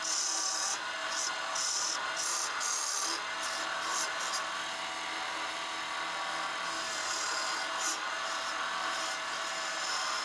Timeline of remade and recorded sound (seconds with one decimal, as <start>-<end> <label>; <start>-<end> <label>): 0.0-1.0 recorded; 1.0-1.7 remade; 1.7-3.9 recorded; 3.9-4.8 remade; 4.8-10.2 recorded